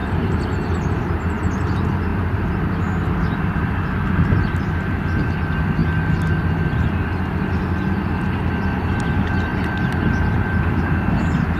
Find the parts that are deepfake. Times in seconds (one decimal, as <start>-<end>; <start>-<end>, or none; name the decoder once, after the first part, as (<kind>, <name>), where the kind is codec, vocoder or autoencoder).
0.0-1.2 (vocoder, BigVGAN v2); 2.1-3.7

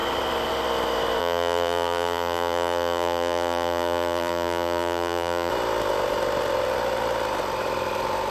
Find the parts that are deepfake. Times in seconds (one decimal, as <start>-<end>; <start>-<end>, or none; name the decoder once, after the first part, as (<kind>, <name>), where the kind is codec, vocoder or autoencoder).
1.2-5.5 (vocoder, BigVGAN v2)